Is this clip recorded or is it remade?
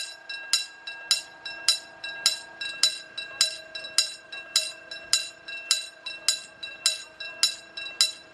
recorded